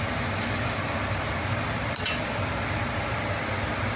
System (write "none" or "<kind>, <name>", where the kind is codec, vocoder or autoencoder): none